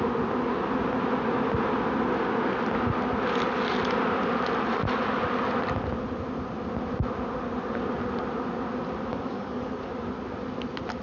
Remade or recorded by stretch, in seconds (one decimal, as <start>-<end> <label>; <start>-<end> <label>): 0.0-9.1 recorded; 9.1-9.9 remade; 9.9-11.0 recorded

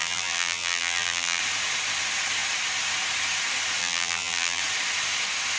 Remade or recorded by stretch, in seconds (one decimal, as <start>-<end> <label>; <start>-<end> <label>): 0.0-1.4 remade; 1.4-3.8 recorded; 3.8-4.6 remade; 4.6-5.6 recorded

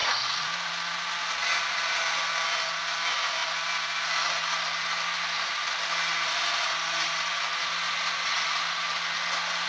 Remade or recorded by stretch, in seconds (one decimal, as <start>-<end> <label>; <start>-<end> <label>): 0.0-0.7 remade; 0.7-9.7 recorded

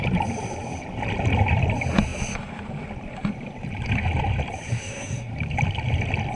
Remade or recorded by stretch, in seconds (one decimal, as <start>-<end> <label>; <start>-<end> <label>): 0.0-4.7 recorded; 4.7-5.3 remade; 5.3-6.4 recorded

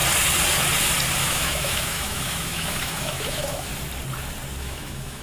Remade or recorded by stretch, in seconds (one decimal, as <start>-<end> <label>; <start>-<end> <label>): 0.0-1.2 recorded; 1.2-3.7 remade; 3.7-4.6 recorded; 4.6-5.2 remade

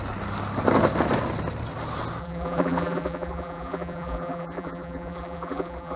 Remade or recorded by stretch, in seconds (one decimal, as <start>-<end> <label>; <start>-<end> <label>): 0.0-2.2 recorded; 2.2-6.0 remade

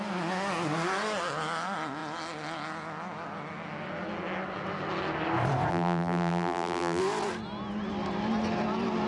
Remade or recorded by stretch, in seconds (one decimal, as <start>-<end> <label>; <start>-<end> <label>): 0.0-5.7 recorded; 5.7-7.0 remade; 7.0-9.1 recorded